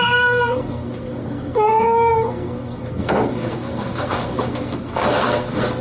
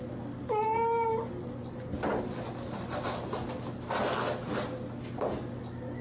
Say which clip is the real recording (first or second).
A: second